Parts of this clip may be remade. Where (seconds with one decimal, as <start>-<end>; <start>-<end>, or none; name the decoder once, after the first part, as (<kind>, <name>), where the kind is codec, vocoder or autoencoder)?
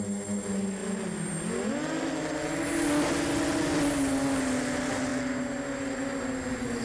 none